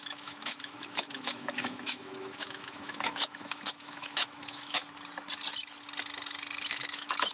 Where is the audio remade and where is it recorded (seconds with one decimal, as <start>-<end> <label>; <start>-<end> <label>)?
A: 0.0-4.8 remade; 4.8-6.7 recorded; 6.7-7.3 remade